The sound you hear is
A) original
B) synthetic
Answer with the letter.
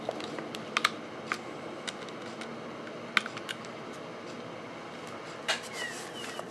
A